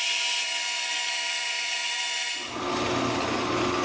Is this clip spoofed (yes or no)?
no